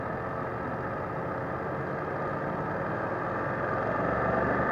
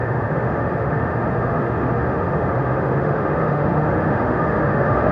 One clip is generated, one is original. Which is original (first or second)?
first